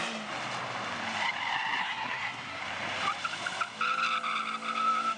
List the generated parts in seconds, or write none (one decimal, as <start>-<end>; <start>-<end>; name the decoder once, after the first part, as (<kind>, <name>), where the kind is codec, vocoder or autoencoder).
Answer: 1.8-2.6 (codec, SNAC)